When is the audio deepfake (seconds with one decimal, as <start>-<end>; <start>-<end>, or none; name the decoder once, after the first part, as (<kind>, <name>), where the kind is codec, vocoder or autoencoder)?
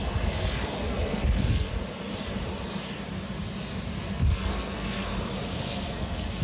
0.0-1.7 (codec, SNAC); 4.0-5.1; 5.6-6.4